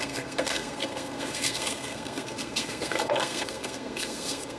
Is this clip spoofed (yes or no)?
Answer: yes